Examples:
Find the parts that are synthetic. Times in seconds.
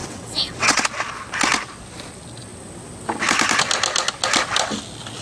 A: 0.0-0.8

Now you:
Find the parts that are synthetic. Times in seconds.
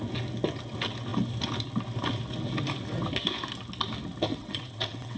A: 4.3-5.2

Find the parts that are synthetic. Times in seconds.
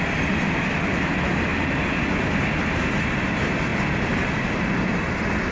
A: none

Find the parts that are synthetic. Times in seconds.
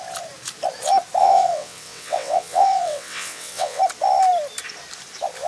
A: 1.2-3.8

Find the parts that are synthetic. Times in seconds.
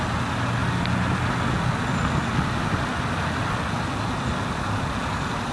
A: none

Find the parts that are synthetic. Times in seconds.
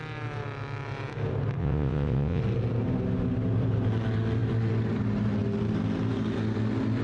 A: 1.6-2.4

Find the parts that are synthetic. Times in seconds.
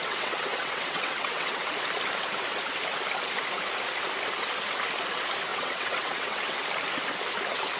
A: 0.0-1.7; 5.5-6.6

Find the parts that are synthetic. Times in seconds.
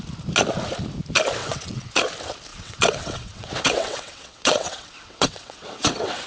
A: 1.4-1.9; 2.5-6.3